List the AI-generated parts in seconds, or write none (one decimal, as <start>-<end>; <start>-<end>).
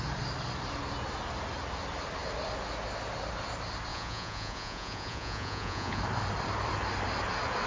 3.9-6.0